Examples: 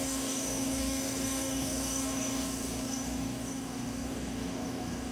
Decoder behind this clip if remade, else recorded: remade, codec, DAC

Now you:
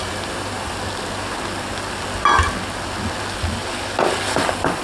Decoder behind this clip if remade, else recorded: recorded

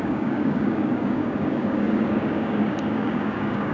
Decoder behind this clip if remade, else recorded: remade, codec, DAC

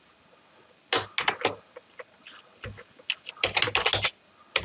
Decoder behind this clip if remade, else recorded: recorded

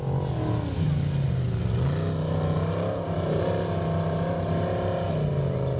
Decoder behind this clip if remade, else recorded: recorded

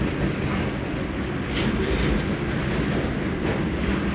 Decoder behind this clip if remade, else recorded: recorded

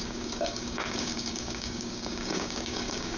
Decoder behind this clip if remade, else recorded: remade, codec, DAC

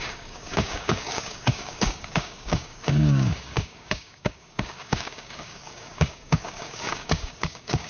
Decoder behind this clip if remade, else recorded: remade, codec, DAC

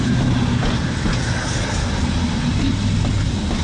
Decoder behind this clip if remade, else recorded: recorded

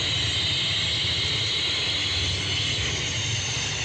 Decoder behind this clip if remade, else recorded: recorded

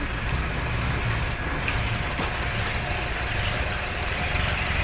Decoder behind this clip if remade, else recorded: recorded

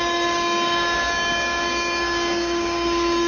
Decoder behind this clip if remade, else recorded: remade, codec, DAC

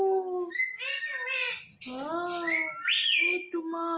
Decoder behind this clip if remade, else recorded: recorded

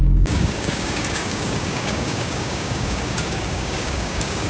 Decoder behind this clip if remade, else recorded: remade, codec, DAC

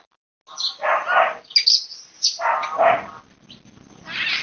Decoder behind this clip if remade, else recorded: recorded